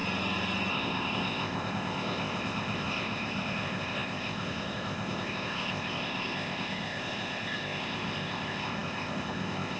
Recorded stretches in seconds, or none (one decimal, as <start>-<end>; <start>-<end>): 0.0-0.7